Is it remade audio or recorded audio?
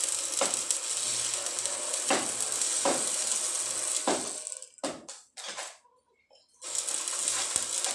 recorded